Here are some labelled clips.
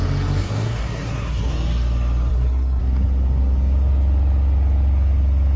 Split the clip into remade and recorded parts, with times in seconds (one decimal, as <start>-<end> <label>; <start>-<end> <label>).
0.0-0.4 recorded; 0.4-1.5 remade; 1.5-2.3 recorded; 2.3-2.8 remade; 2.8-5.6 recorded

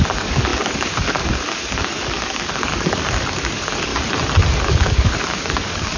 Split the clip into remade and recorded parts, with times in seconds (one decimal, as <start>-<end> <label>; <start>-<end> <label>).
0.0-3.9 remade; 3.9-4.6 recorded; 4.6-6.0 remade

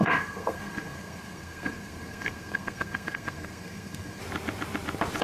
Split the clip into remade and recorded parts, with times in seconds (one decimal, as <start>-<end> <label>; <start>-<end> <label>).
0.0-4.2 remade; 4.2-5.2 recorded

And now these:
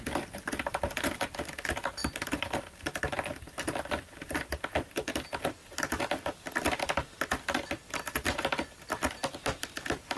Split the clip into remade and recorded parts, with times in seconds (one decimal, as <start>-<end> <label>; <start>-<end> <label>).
0.0-2.0 recorded; 2.0-4.5 remade; 4.5-10.2 recorded

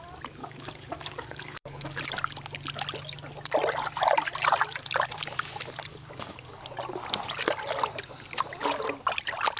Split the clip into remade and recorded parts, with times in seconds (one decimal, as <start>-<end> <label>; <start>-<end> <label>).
0.0-0.4 recorded; 0.4-2.0 remade; 2.0-5.9 recorded; 5.9-6.6 remade; 6.6-9.6 recorded